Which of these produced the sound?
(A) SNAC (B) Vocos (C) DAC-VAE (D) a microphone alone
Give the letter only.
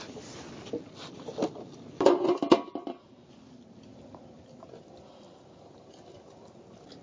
D